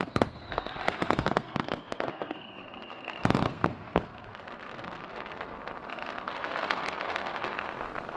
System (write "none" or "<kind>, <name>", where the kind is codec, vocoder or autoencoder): codec, SNAC